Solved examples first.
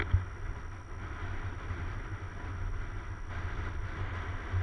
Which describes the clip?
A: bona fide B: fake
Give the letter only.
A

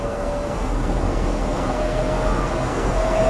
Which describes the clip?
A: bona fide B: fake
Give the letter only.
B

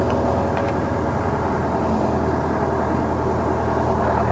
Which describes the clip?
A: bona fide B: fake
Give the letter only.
A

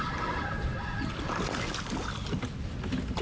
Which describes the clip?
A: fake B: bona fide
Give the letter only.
B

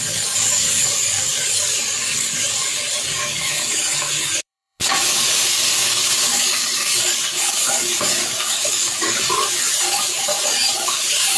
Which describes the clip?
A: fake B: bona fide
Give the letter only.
A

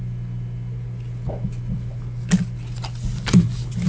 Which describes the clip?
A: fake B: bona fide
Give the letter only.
B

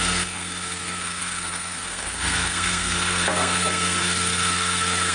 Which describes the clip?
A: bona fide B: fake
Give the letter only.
B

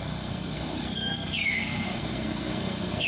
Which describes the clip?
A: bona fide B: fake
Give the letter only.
B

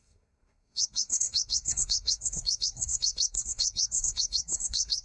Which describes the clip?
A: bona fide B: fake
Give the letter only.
B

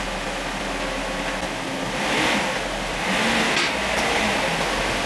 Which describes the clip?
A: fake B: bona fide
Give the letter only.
B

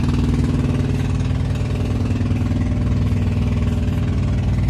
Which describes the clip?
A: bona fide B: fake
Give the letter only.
A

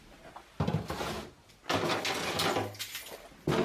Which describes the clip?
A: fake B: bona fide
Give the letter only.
B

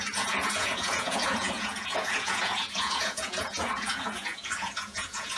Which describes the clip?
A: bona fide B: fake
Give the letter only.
B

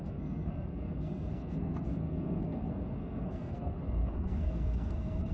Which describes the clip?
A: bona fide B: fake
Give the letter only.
B